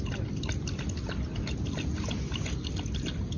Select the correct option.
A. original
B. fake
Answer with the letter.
A